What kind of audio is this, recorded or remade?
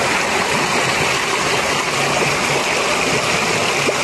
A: recorded